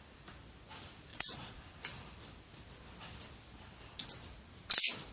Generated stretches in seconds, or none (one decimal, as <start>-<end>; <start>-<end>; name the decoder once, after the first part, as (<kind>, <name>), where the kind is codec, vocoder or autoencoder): 1.1-1.6 (vocoder, Vocos)